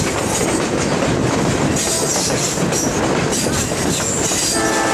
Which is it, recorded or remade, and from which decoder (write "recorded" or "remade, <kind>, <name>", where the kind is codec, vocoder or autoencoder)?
recorded